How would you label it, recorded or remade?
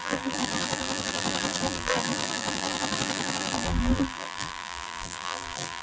remade